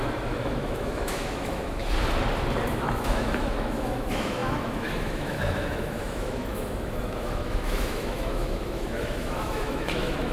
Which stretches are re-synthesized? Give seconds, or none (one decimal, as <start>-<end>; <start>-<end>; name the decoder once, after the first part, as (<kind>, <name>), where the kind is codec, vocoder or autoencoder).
0.0-1.8 (autoencoder, DAC-VAE); 2.7-10.3

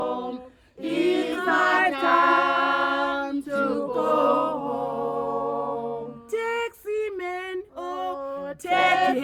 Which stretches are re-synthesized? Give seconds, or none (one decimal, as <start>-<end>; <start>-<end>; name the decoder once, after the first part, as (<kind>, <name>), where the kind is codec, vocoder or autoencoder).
none

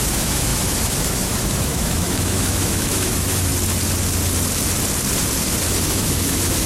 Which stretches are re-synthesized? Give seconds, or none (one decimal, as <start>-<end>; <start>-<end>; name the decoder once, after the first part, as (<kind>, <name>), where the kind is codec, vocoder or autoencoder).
0.0-3.5 (autoencoder, DAC-VAE); 5.6-6.7

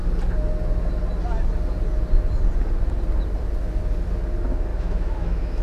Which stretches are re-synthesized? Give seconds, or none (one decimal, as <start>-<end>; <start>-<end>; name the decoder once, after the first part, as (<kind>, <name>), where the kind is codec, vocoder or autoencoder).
4.7-5.6 (autoencoder, DAC-VAE)

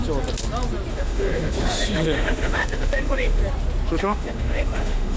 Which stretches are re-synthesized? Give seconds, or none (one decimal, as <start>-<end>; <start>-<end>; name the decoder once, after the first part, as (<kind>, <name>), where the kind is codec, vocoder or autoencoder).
0.9-3.4 (autoencoder, DAC-VAE); 4.0-5.2

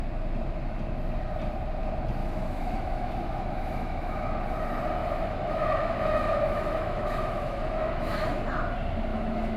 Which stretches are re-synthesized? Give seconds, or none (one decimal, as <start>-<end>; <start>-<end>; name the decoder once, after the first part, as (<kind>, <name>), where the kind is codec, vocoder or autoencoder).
2.2-4.4 (autoencoder, DAC-VAE); 5.0-8.4; 9.1-9.6